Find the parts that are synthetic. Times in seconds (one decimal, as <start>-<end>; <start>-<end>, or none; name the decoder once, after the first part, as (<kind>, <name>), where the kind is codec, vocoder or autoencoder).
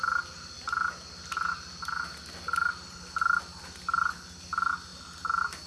none